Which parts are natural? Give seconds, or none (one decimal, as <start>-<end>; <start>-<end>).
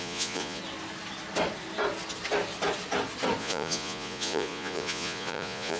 0.6-3.4